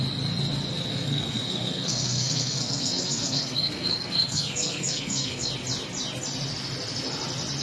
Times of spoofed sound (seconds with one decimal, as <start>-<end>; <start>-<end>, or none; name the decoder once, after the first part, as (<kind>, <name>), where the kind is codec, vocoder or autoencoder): 0.9-5.5 (codec, SNAC)